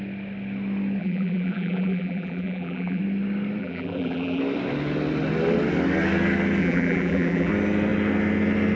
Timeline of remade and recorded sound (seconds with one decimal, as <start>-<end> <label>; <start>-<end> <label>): 0.0-1.0 recorded; 1.0-3.0 remade; 3.0-3.6 recorded; 3.6-4.4 remade; 4.4-6.6 recorded; 6.6-7.5 remade; 7.5-8.8 recorded

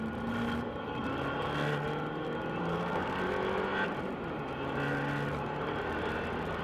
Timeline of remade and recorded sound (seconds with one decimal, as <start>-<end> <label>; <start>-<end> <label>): 0.0-2.6 recorded; 2.6-3.2 remade; 3.2-6.6 recorded

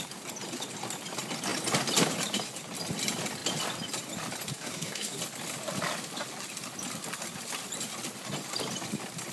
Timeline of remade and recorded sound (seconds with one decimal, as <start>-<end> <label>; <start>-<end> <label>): 0.0-4.5 recorded; 4.5-5.2 remade; 5.2-9.3 recorded

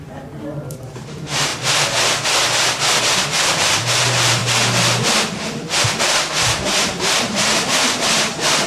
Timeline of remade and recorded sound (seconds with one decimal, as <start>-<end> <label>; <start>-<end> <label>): 0.0-1.5 remade; 1.5-3.0 recorded; 3.0-4.4 remade; 4.4-6.0 recorded; 6.0-8.7 remade